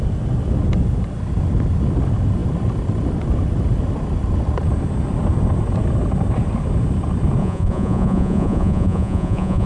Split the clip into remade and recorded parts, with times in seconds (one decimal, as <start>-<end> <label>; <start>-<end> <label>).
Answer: 0.0-7.4 recorded; 7.4-9.7 remade